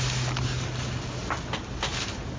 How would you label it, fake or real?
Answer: real